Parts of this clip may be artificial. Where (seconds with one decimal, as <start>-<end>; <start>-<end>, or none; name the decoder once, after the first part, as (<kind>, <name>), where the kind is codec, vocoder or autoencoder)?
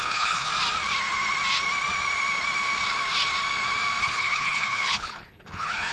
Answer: 0.0-0.5 (codec, HILCodec); 4.0-5.9